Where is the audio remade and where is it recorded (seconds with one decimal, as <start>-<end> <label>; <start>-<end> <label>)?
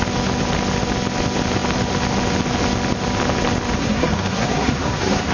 0.0-3.8 recorded; 3.8-5.3 remade